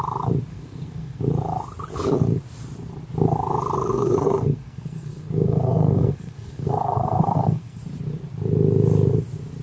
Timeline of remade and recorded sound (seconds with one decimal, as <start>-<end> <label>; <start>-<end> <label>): 0.0-0.5 recorded; 0.5-1.2 remade; 1.2-3.9 recorded; 3.9-7.8 remade; 7.8-9.6 recorded

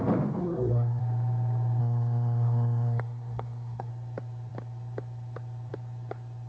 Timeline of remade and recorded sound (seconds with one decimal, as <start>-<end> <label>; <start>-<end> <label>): 0.0-0.4 recorded; 0.4-1.0 remade; 1.0-1.8 recorded; 1.8-3.9 remade; 3.9-6.5 recorded

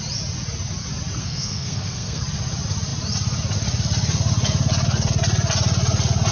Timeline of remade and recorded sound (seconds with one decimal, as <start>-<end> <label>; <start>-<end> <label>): 0.0-1.2 recorded; 1.2-2.2 remade; 2.2-6.3 recorded

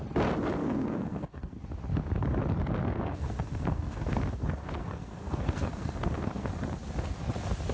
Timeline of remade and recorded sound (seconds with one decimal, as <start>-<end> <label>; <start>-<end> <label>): 0.0-0.6 recorded; 0.6-1.6 remade; 1.6-2.8 recorded; 2.8-6.5 remade; 6.5-7.7 recorded

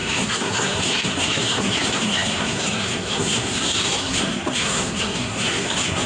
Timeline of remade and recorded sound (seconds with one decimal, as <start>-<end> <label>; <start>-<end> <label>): 0.0-6.1 remade

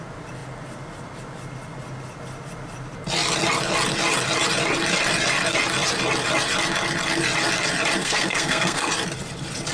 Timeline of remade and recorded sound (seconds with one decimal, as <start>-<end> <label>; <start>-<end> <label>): 0.0-8.0 recorded; 8.0-8.9 remade; 8.9-9.7 recorded

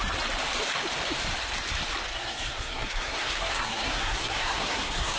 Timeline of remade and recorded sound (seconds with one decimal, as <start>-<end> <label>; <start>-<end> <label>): 0.0-2.1 recorded; 2.1-5.2 remade